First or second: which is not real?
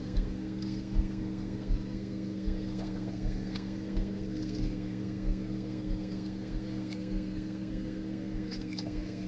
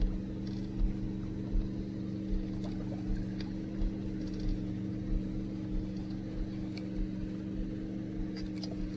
first